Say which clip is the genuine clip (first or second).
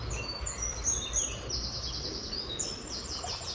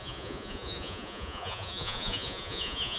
first